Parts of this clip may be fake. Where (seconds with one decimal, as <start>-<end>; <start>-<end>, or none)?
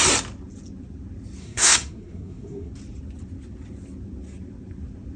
1.4-2.7